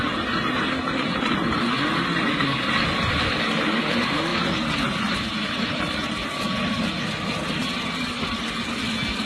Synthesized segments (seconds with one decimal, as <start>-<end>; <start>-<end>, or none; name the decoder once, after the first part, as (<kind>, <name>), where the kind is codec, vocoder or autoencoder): none